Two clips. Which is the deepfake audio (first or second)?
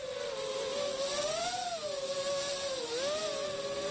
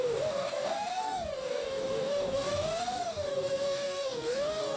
second